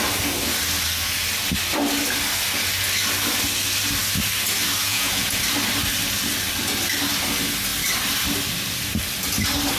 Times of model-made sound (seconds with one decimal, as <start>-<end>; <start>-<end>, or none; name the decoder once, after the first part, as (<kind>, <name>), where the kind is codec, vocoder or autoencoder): 4.9-5.4 (vocoder, Vocos)